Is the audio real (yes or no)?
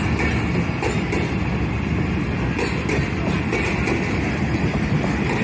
yes